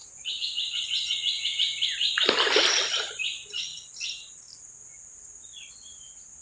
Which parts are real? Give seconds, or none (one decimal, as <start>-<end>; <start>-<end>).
1.6-5.4